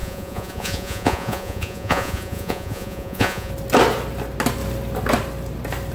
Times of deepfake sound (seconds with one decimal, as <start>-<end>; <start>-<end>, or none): 0.0-3.5